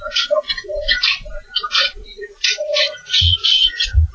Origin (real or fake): fake